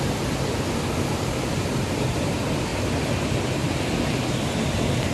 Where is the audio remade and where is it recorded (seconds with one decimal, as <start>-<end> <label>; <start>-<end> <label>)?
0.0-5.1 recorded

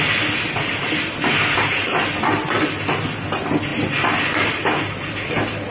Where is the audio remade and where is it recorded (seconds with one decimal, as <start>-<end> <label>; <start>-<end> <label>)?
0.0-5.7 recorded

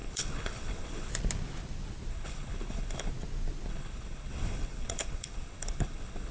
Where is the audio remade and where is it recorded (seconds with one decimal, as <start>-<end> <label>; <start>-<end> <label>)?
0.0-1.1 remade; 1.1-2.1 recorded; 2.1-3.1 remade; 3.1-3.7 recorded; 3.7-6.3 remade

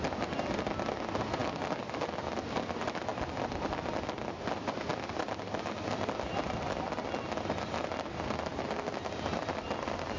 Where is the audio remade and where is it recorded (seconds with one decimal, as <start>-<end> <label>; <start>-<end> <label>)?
0.0-10.2 recorded